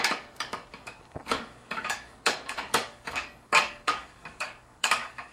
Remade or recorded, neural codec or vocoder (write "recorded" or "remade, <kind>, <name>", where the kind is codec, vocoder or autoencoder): remade, codec, DAC